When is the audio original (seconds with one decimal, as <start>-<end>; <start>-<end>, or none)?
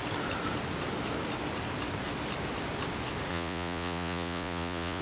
0.0-3.3